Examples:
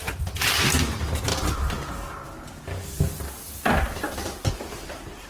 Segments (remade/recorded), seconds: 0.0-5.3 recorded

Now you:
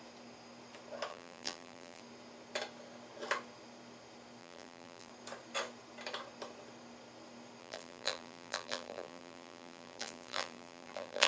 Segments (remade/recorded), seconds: 0.0-1.1 recorded; 1.1-2.0 remade; 2.0-4.4 recorded; 4.4-5.1 remade; 5.1-7.6 recorded; 7.6-11.3 remade

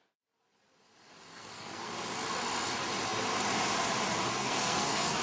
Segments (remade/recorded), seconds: 0.0-1.3 recorded; 1.3-1.9 remade; 1.9-4.3 recorded; 4.3-5.2 remade